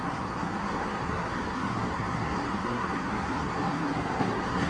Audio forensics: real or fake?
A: fake